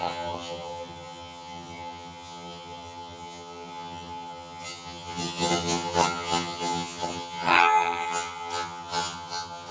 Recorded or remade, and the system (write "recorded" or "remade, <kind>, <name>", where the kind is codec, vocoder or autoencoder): remade, vocoder, HiFi-GAN